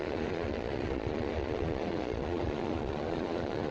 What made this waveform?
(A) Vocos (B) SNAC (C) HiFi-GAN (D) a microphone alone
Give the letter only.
A